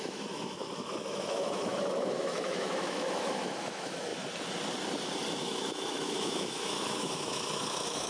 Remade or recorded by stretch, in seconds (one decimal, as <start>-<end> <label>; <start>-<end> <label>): 0.0-4.1 remade; 4.1-5.4 recorded; 5.4-8.1 remade